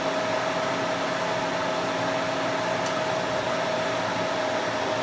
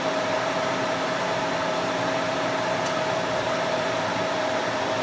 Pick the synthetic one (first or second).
second